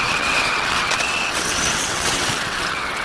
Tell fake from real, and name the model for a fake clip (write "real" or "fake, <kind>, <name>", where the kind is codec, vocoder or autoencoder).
fake, vocoder, WaveNeXt